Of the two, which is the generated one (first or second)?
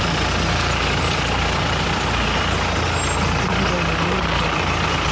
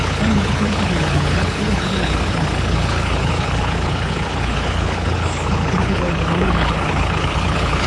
second